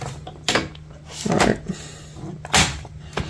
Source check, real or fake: real